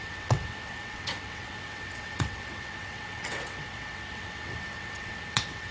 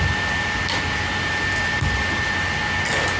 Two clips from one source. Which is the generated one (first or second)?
first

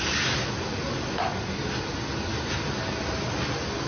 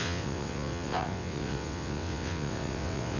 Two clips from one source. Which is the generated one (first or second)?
second